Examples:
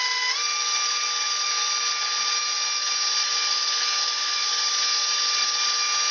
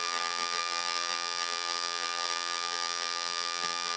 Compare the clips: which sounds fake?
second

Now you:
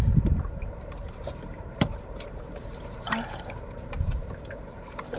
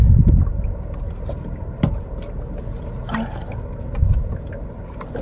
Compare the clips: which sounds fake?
first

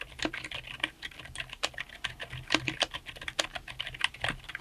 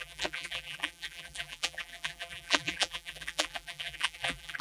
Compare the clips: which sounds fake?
second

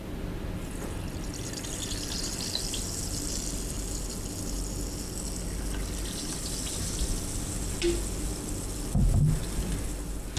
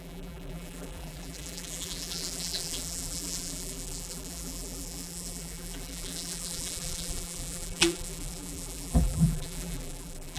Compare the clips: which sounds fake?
second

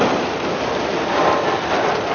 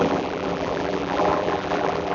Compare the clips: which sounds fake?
second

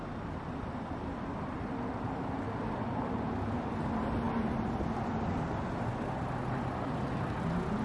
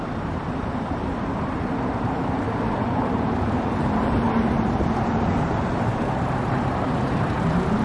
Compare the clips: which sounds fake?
second